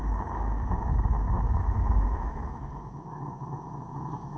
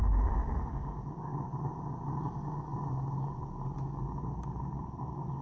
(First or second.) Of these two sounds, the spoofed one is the first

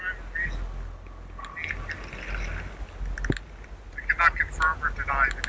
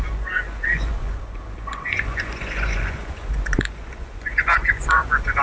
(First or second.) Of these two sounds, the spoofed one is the second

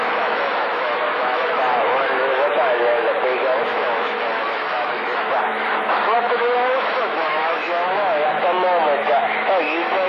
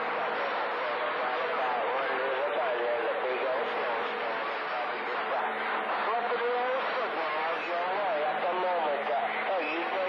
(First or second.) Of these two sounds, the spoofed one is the first